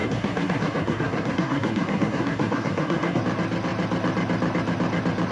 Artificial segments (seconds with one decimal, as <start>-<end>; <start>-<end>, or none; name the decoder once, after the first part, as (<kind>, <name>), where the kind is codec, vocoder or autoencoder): 0.0-3.2 (codec, SNAC)